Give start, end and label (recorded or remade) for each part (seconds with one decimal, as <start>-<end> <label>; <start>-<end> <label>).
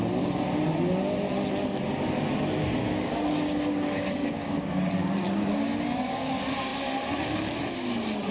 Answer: 0.0-2.8 recorded; 2.8-6.3 remade; 6.3-8.3 recorded